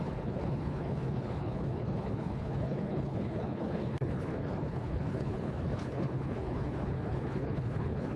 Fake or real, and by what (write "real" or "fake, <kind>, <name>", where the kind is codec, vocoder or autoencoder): fake, codec, HILCodec